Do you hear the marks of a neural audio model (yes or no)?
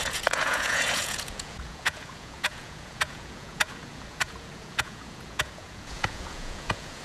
yes